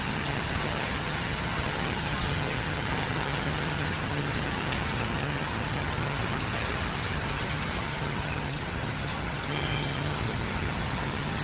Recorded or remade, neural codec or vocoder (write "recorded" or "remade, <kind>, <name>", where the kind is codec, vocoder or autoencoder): remade, vocoder, HiFi-GAN